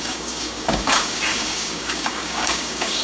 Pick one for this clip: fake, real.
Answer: fake